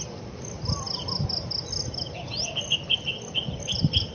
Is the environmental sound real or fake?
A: real